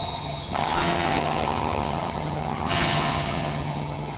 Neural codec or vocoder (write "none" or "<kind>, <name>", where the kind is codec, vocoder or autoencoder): vocoder, HiFi-GAN